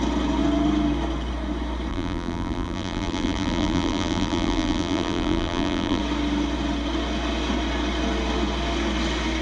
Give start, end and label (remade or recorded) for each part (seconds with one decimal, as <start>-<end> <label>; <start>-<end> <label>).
0.0-1.9 recorded; 1.9-6.0 remade; 6.0-9.4 recorded